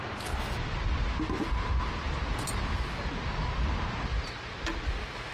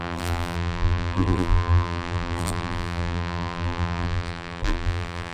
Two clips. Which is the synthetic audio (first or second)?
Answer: second